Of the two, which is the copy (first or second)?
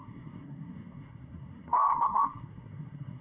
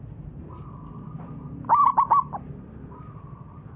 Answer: first